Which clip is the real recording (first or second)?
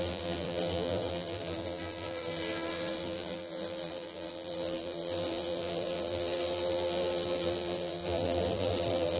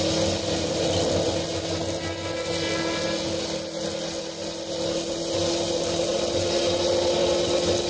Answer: second